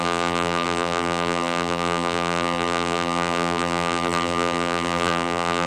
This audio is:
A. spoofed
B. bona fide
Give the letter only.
A